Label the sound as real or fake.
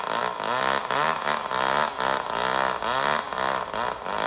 real